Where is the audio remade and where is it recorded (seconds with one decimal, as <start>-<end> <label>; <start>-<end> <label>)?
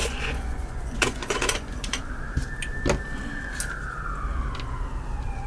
0.0-2.1 remade; 2.1-5.5 recorded